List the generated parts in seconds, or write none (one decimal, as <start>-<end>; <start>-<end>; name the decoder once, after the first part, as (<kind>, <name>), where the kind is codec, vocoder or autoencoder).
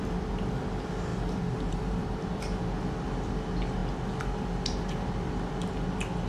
1.1-2.3 (vocoder, BigVGAN v2)